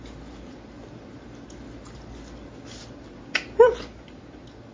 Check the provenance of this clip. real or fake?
real